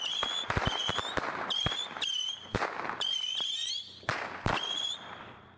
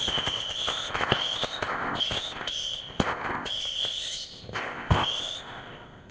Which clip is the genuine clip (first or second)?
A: first